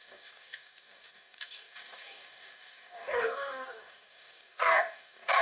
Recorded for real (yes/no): no